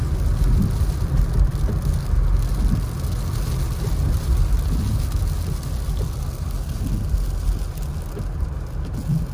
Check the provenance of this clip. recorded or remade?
recorded